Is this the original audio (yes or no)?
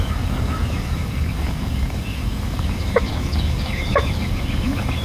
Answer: no